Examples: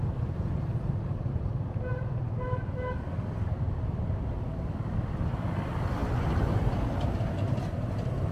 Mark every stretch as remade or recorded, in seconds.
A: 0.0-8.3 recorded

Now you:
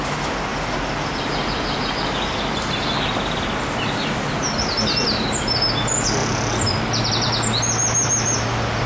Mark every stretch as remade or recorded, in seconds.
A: 0.0-8.9 recorded

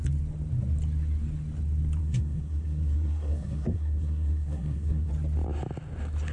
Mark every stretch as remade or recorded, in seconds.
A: 0.0-2.0 recorded; 2.0-5.1 remade; 5.1-6.3 recorded

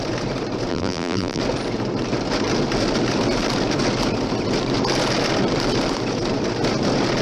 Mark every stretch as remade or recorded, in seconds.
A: 0.0-0.7 recorded; 0.7-1.4 remade; 1.4-7.2 recorded

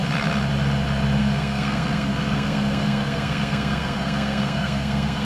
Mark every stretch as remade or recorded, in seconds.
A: 0.0-1.2 recorded; 1.2-5.2 remade

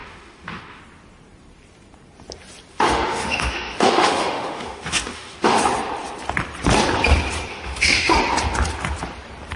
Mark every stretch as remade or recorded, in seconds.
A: 0.0-0.8 remade; 0.8-2.7 recorded; 2.7-5.6 remade; 5.6-7.5 recorded; 7.5-8.2 remade; 8.2-9.6 recorded

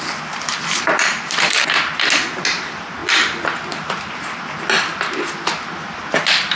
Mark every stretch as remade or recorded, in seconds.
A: 0.0-6.6 recorded